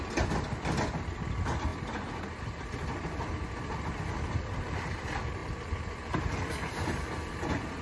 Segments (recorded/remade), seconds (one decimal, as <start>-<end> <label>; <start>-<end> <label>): 0.0-7.8 recorded